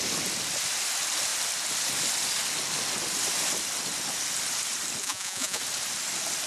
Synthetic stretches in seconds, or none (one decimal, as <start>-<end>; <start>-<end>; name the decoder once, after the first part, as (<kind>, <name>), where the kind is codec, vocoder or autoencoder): 5.0-5.6 (vocoder, Vocos)